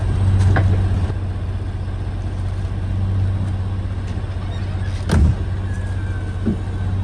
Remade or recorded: recorded